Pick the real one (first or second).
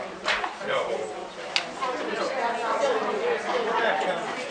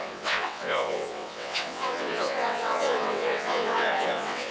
first